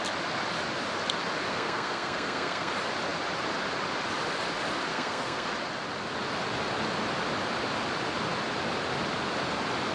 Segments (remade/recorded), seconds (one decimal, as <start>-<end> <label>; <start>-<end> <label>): 0.0-1.5 recorded; 1.5-2.7 remade; 2.7-4.9 recorded; 4.9-5.5 remade; 5.5-9.9 recorded